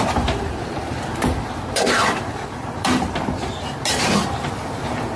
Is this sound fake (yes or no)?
yes